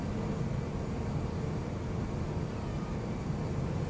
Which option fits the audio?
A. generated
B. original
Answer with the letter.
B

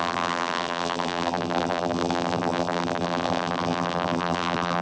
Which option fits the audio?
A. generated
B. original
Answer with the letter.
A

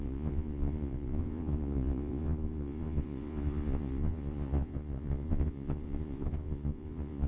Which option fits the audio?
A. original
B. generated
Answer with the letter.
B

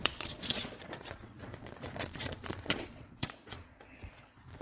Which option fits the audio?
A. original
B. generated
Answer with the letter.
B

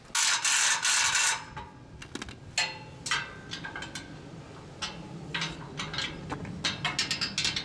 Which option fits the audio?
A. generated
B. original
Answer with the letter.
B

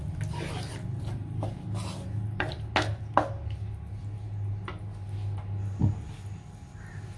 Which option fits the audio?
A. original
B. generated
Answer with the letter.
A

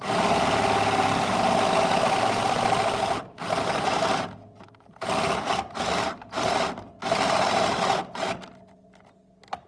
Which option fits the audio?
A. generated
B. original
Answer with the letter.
B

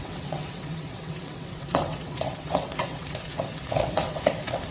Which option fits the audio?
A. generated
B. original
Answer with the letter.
A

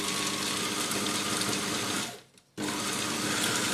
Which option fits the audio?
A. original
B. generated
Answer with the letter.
A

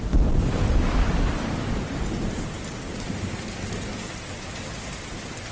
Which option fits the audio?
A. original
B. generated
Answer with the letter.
A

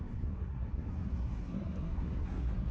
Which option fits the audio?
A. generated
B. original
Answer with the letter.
A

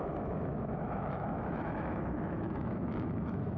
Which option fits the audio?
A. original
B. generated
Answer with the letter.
B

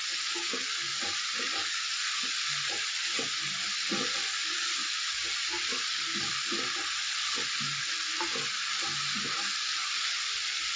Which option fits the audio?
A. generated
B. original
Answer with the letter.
B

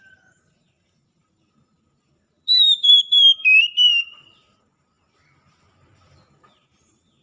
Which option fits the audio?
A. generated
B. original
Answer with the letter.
A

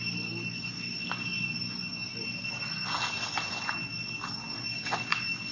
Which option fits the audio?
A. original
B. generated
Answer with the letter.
A